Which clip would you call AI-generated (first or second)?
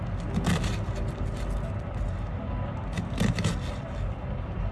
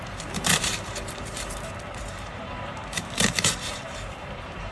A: second